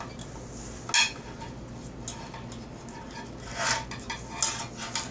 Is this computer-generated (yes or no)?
no